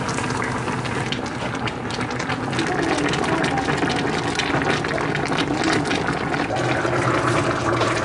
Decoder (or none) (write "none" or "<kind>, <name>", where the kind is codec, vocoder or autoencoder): none